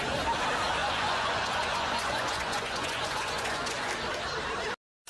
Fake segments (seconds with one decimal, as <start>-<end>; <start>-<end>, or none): 0.8-3.9